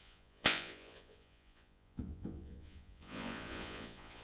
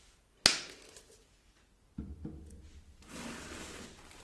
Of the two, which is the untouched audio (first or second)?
second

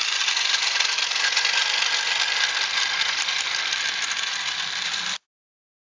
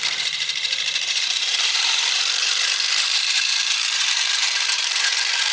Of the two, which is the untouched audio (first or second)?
first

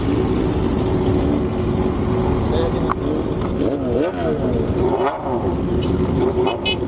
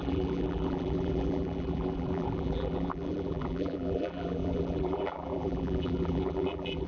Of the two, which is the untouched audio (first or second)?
first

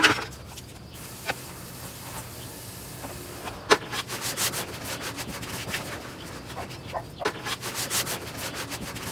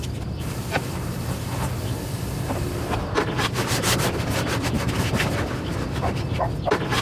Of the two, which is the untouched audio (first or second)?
first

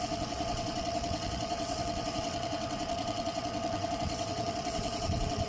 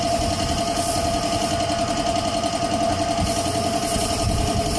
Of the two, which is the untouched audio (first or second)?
second